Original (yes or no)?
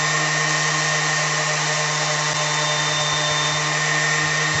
yes